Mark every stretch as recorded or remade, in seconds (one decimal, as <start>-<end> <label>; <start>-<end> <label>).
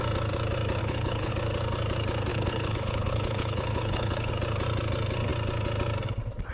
0.0-0.8 recorded; 0.8-1.3 remade; 1.3-2.3 recorded; 2.3-4.3 remade; 4.3-6.5 recorded